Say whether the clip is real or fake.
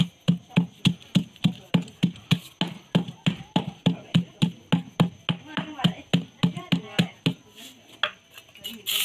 real